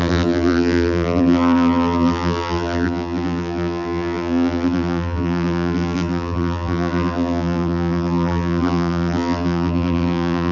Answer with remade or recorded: remade